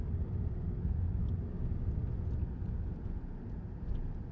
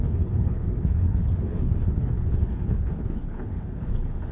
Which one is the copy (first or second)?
second